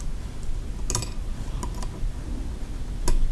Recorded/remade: recorded